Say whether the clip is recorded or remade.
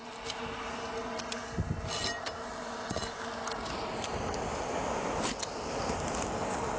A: recorded